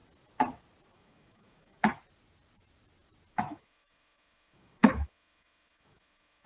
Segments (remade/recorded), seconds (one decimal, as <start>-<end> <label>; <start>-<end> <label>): 0.0-0.9 recorded; 0.9-1.8 remade; 1.8-3.3 recorded; 3.3-6.5 remade